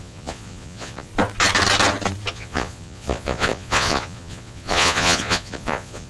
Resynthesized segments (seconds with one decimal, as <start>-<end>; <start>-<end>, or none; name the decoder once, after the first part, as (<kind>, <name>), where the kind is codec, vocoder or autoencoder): 0.0-1.1 (vocoder, Vocos); 2.3-6.1